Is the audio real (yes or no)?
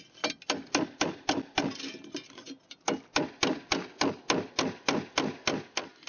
yes